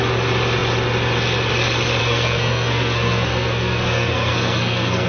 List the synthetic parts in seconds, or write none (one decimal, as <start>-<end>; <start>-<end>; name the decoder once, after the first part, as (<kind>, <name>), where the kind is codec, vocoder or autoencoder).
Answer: 2.0-5.1 (codec, SNAC)

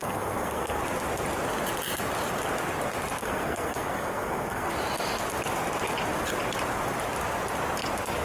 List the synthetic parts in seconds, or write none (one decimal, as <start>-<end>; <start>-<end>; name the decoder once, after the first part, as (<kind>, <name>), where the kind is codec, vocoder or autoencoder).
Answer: 0.0-0.8 (codec, SNAC); 3.2-4.7

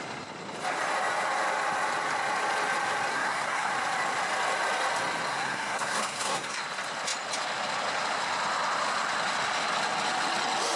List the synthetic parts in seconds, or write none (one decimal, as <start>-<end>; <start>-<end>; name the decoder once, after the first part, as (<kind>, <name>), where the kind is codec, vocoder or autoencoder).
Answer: 3.1-3.7 (codec, SNAC); 5.3-6.6

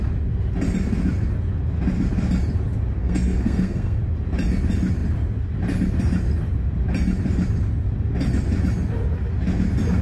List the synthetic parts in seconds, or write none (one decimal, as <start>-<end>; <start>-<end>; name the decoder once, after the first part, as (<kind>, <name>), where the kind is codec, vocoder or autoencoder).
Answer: 3.0-4.0 (codec, SNAC)

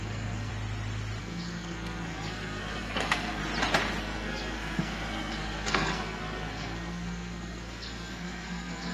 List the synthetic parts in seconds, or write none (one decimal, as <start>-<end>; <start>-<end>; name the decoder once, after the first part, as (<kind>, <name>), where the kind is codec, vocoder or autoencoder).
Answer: 0.0-0.5 (codec, SNAC); 1.2-3.4; 4.0-8.9